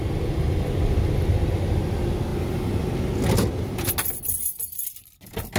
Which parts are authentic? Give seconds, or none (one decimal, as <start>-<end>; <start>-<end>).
0.0-5.6